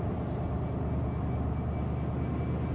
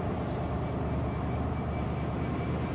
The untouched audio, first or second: first